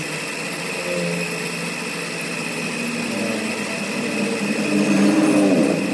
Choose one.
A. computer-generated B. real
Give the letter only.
B